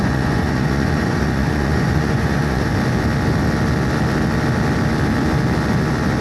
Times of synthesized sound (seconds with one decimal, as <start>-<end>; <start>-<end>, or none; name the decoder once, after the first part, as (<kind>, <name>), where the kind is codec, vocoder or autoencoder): 0.0-2.7 (vocoder, Vocos)